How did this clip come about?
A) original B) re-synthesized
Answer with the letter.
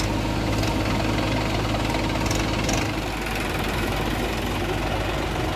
A